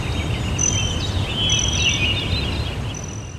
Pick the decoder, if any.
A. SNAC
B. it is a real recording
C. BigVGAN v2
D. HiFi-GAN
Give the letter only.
B